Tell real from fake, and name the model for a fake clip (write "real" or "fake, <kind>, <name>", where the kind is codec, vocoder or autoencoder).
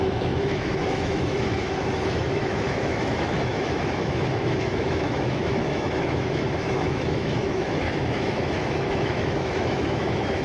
fake, autoencoder, DAC-VAE